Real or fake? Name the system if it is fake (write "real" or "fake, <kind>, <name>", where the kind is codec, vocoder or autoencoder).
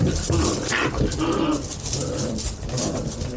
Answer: real